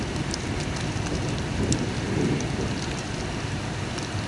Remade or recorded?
remade